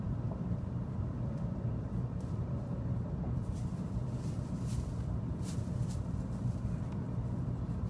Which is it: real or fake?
fake